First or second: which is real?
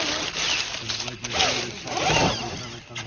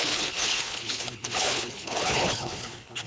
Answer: first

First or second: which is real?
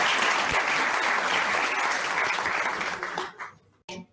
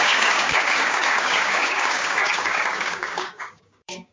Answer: first